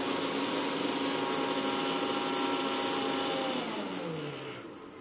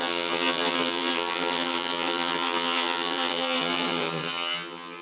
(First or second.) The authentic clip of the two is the first